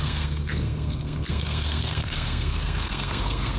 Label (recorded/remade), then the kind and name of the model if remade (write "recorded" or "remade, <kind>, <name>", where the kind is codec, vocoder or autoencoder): remade, codec, SNAC